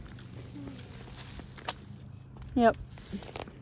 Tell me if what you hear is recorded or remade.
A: recorded